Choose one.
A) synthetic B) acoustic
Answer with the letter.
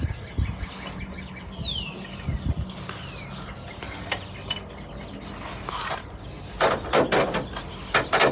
B